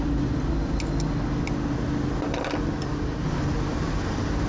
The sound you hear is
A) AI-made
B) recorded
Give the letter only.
B